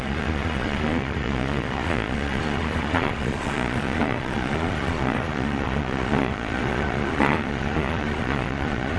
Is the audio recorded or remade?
remade